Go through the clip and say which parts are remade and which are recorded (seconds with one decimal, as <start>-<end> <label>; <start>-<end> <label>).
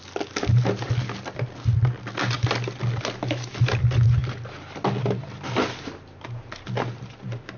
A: 0.0-7.6 recorded